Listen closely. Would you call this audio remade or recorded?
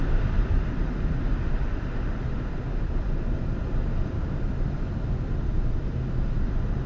remade